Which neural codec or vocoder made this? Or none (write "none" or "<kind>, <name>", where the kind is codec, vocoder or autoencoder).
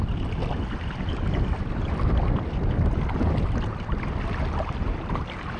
none